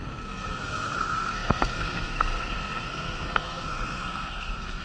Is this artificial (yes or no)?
yes